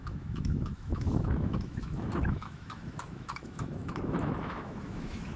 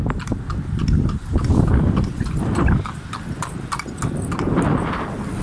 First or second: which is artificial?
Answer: first